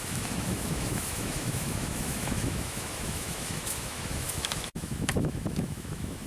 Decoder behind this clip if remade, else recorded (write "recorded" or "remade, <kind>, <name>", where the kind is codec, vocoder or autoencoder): remade, autoencoder, DAC-VAE